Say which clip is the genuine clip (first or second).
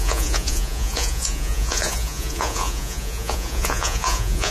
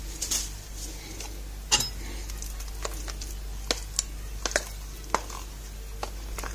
second